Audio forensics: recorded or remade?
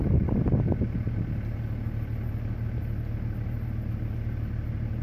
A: recorded